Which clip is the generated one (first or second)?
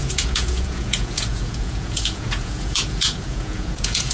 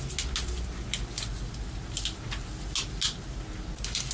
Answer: first